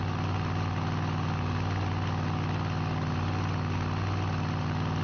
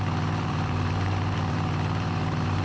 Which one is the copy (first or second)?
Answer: second